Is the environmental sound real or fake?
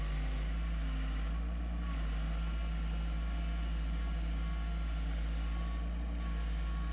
real